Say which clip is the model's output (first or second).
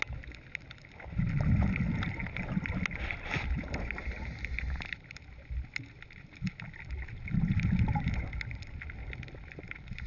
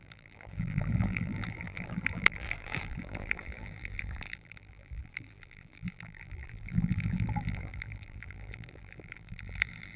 second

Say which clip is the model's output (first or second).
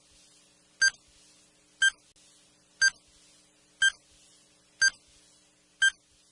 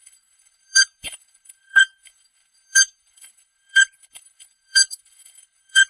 second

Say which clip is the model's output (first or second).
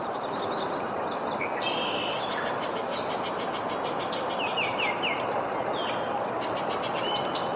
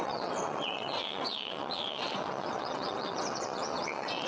second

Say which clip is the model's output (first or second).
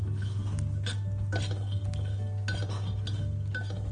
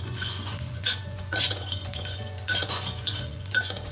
second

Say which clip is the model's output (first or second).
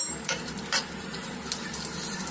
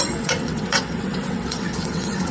second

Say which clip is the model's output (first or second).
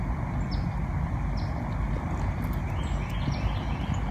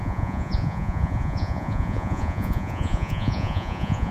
second